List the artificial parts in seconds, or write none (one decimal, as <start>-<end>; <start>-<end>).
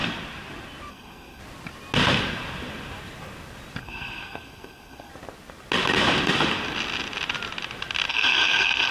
0.9-1.4; 3.8-5.1; 8.1-8.9